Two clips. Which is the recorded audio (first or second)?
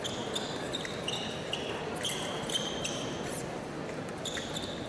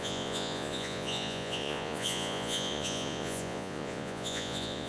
first